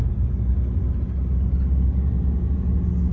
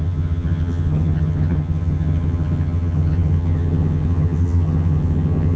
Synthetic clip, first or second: second